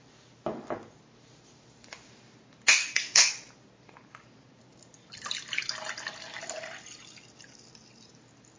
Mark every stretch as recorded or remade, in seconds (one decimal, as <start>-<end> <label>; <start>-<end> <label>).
0.0-2.7 recorded; 2.7-3.3 remade; 3.3-8.6 recorded